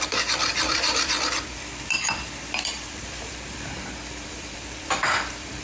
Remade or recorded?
remade